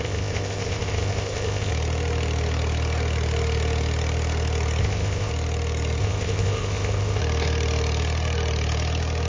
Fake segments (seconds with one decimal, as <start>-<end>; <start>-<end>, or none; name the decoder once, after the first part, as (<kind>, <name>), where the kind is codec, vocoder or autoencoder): 0.0-1.7 (codec, ZipCodec); 4.8-5.3; 6.0-7.2

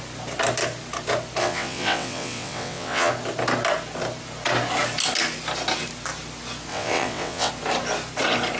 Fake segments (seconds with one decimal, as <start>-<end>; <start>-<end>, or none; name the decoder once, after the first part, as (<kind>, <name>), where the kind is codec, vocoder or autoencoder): 1.4-3.1 (vocoder, WaveNeXt); 6.7-7.5

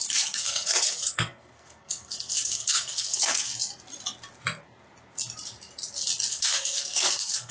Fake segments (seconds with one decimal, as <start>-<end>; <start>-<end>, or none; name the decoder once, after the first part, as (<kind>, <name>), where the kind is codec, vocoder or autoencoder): 0.0-3.5 (codec, SNAC); 6.3-7.5

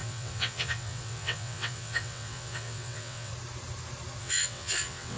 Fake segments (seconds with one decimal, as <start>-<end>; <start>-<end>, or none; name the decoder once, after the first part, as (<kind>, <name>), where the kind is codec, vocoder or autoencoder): 0.0-3.3 (vocoder, WaveNeXt); 4.2-5.2